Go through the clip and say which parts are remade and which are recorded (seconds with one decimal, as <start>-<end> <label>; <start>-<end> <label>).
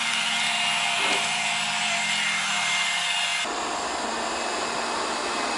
0.0-5.6 recorded